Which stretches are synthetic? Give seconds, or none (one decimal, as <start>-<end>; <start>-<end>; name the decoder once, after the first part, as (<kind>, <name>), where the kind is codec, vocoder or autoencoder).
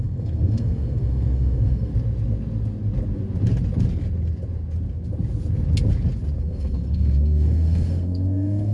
0.0-1.9 (codec, SNAC); 6.4-8.7